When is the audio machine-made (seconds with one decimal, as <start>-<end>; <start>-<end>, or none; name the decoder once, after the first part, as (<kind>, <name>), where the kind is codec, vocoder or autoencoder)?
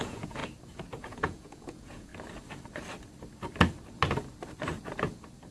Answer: 0.0-0.4 (vocoder, Vocos); 1.0-2.1